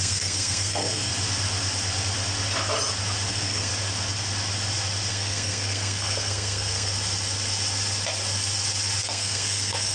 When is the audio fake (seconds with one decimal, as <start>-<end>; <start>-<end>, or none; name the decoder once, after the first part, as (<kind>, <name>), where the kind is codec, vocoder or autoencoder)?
0.0-1.1 (codec, SNAC); 3.3-3.7; 5.1-6.9; 9.0-9.9